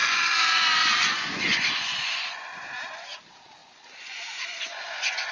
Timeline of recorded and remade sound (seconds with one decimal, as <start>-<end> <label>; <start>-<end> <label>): 0.0-3.2 remade; 3.2-3.6 recorded; 3.6-5.3 remade